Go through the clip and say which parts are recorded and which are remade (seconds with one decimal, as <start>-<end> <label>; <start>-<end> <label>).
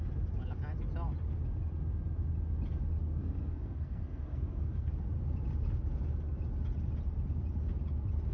0.0-3.2 recorded; 3.2-4.9 remade; 4.9-8.3 recorded